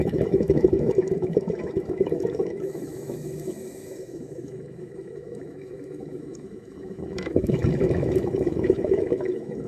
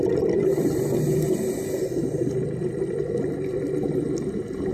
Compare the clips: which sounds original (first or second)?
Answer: second